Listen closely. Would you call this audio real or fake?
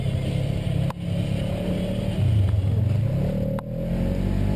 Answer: real